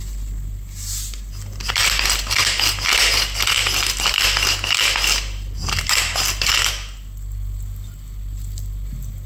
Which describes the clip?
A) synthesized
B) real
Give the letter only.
B